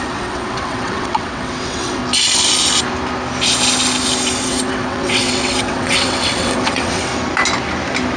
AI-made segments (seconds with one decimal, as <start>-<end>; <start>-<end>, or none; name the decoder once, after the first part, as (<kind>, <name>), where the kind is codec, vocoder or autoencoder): 0.0-2.0 (vocoder, WaveNeXt); 4.4-7.1